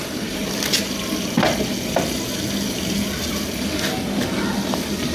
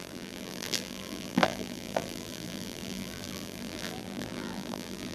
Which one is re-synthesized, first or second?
second